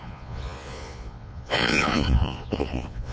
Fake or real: fake